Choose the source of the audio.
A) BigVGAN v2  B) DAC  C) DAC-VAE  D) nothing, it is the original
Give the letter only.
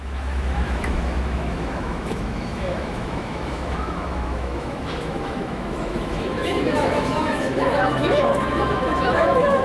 C